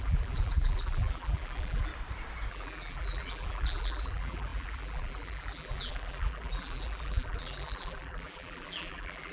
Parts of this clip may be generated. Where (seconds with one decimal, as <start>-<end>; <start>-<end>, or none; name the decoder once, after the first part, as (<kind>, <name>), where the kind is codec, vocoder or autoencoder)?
0.0-1.9 (vocoder, BigVGAN v2); 2.5-9.3

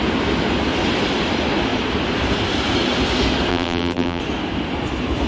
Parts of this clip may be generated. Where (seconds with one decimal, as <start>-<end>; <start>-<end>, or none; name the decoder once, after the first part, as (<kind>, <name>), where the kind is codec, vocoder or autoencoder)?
3.5-4.2 (vocoder, BigVGAN v2)